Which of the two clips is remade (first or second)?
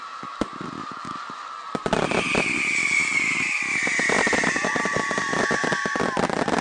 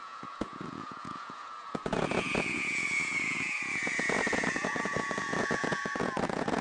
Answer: second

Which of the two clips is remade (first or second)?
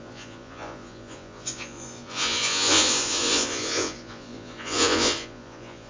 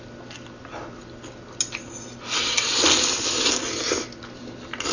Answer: first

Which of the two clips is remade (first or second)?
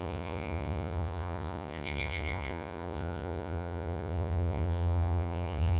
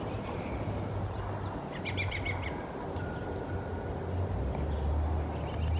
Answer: first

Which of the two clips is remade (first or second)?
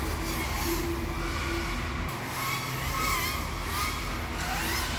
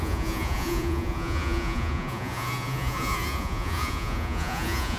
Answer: second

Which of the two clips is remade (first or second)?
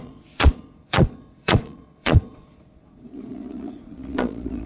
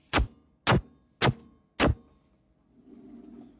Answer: first